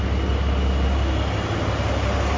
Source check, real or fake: real